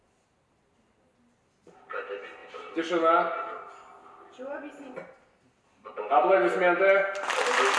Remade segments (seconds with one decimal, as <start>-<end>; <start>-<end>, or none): none